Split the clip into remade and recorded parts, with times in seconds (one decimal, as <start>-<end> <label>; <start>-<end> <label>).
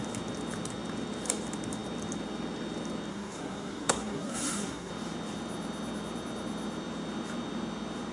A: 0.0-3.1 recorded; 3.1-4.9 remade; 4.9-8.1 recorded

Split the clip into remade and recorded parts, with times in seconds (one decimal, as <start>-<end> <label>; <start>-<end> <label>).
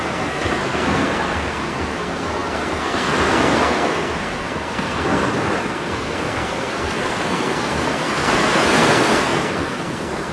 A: 0.0-10.3 remade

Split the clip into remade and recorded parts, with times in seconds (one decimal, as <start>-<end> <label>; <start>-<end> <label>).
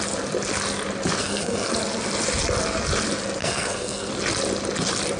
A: 0.0-1.2 recorded; 1.2-1.7 remade; 1.7-3.4 recorded; 3.4-4.1 remade; 4.1-5.2 recorded